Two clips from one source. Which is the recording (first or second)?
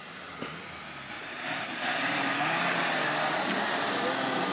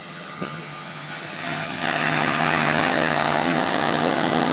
first